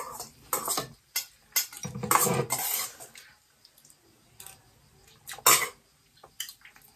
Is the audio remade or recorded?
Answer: recorded